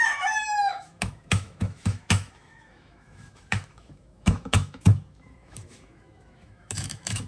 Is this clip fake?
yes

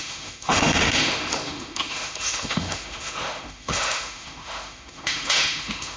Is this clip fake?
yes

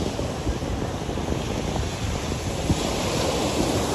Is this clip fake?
no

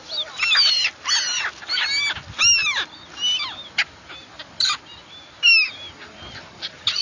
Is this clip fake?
no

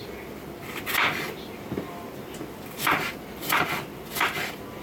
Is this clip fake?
no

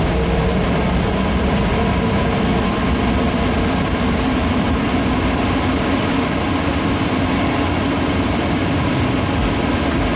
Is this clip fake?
no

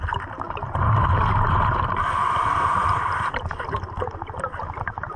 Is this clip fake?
no